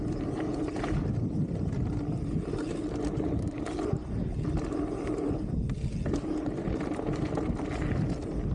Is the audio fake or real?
real